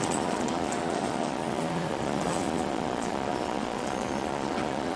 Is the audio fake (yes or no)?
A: yes